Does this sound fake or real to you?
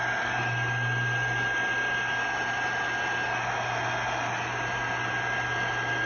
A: real